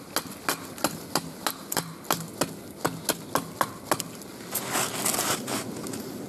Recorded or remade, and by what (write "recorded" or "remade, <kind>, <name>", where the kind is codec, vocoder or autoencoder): recorded